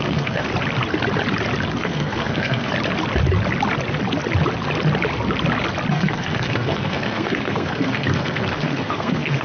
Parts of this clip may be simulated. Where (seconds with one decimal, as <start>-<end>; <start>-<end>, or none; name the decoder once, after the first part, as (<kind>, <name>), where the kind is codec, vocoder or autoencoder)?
0.0-0.5 (codec, SNAC); 1.8-2.7; 5.9-9.4